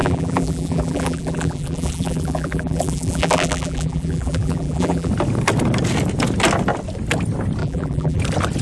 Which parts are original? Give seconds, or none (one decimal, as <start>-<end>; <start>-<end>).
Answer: 5.1-7.6; 8.2-8.6